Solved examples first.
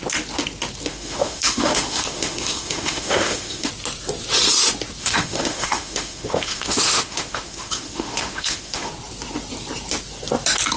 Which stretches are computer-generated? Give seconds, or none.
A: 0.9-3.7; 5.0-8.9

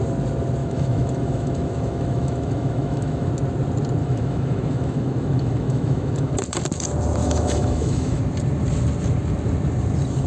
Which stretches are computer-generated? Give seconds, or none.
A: 0.6-3.3; 4.0-6.3; 7.2-8.2

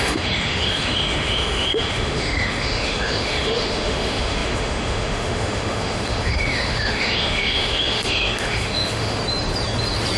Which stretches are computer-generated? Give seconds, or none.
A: 0.0-9.2

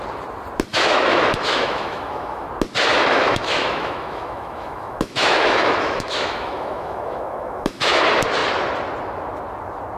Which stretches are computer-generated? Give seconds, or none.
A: 0.7-2.5; 2.9-8.0

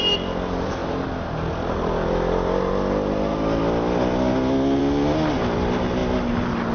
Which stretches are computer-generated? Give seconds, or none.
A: none

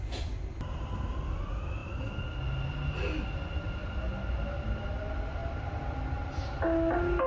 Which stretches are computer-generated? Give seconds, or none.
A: none

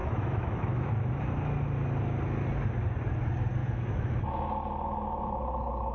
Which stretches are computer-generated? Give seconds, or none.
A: 0.0-1.1; 3.6-4.2

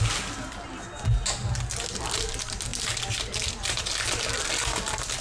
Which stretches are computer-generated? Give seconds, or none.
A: none